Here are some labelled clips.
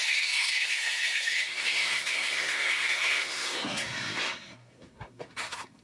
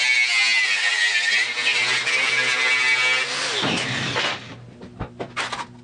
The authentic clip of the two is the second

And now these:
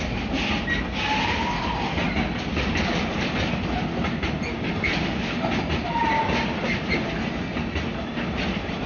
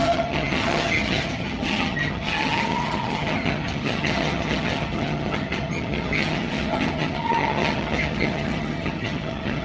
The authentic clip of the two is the first